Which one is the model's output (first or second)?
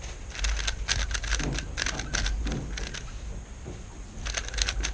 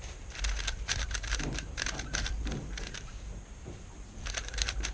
second